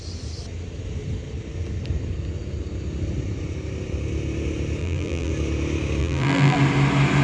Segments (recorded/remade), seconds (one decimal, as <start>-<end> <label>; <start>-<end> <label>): 0.0-4.8 recorded; 4.8-5.3 remade; 5.3-6.0 recorded; 6.0-6.6 remade; 6.6-7.2 recorded

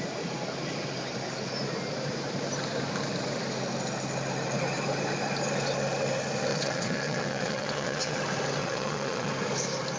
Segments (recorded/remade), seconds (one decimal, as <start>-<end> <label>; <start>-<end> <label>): 0.0-6.5 recorded; 6.5-8.2 remade; 8.2-8.6 recorded; 8.6-9.3 remade; 9.3-10.0 recorded

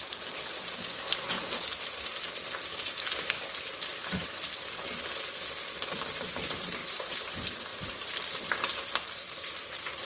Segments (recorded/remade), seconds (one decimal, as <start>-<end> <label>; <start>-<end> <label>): 0.0-6.8 recorded; 6.8-7.3 remade; 7.3-7.7 recorded; 7.7-8.4 remade; 8.4-10.1 recorded